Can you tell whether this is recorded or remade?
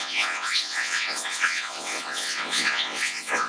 remade